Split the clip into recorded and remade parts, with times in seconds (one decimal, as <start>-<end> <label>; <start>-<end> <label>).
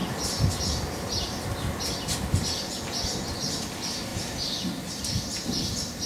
0.0-6.1 recorded